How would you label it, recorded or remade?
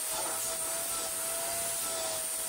recorded